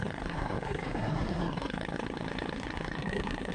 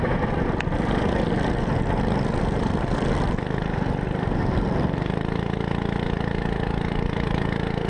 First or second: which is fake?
first